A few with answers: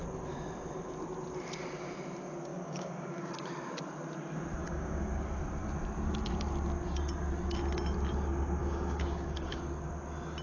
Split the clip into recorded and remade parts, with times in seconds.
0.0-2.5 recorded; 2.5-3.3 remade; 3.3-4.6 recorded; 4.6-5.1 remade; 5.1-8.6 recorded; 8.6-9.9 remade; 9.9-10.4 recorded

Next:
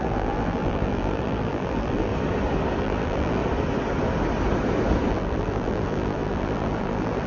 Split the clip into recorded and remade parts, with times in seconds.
0.0-2.1 remade; 2.1-2.8 recorded; 2.8-3.4 remade; 3.4-5.1 recorded; 5.1-7.3 remade

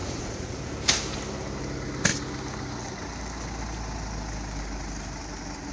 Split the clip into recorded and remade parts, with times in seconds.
0.0-0.7 remade; 0.7-5.7 recorded

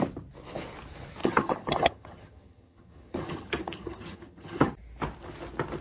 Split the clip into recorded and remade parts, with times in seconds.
0.0-1.2 recorded; 1.2-4.7 remade; 4.7-5.8 recorded

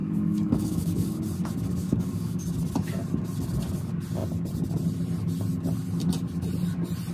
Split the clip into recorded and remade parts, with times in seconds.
0.0-1.2 remade; 1.2-1.8 recorded; 1.8-2.4 remade; 2.4-7.1 recorded

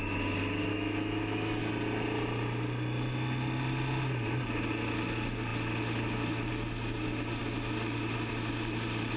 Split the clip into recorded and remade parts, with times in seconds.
0.0-0.7 recorded; 0.7-1.6 remade; 1.6-9.2 recorded

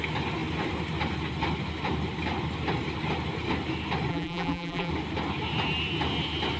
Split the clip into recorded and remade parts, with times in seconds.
0.0-4.1 recorded; 4.1-4.9 remade; 4.9-6.6 recorded